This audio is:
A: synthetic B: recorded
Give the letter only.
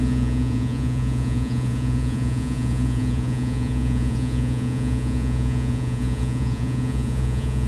A